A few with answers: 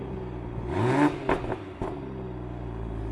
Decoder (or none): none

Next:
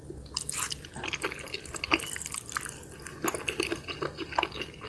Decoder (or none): none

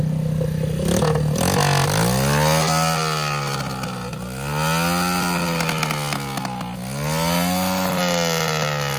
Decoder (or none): none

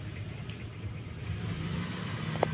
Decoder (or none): none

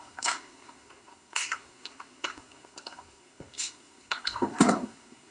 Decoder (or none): codec, SNAC